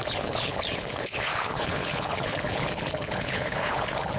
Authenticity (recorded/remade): remade